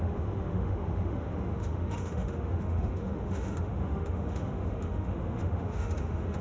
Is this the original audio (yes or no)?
no